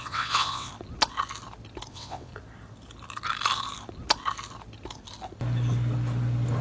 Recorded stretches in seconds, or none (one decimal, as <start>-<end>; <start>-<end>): 0.7-1.9; 2.3-6.6